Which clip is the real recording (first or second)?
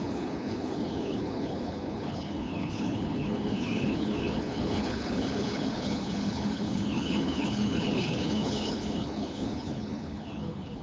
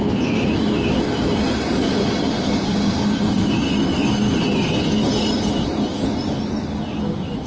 second